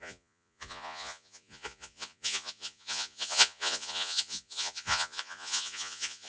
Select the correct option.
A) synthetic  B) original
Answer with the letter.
A